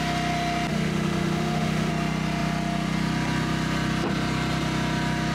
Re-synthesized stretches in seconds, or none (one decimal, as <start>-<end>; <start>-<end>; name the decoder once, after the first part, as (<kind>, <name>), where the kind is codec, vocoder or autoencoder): 0.7-1.9 (autoencoder, DAC-VAE)